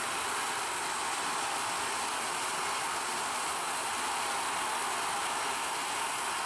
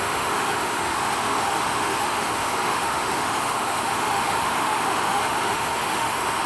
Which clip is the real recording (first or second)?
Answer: first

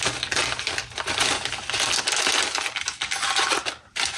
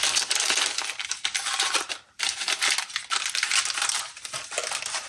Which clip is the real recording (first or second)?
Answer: first